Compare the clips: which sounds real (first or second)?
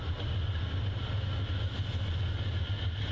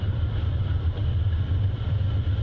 first